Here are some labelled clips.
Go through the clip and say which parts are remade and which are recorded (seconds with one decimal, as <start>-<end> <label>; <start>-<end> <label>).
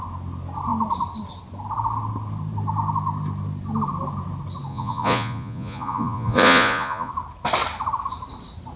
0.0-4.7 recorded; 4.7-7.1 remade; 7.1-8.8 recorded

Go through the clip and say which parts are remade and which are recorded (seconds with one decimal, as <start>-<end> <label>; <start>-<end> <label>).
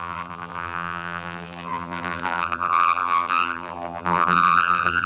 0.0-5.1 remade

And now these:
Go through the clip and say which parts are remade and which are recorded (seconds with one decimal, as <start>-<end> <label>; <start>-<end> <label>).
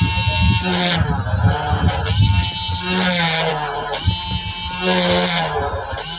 0.0-6.2 recorded